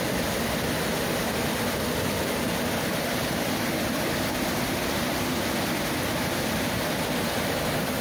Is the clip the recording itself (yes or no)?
yes